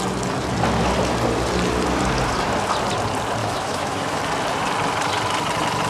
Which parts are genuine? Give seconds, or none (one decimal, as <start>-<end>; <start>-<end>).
0.0-3.4; 4.2-5.9